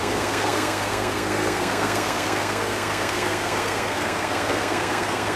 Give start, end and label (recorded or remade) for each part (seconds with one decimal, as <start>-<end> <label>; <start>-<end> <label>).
0.0-5.4 remade